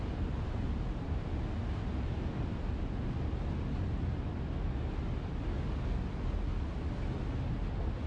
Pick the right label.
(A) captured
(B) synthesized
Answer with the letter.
A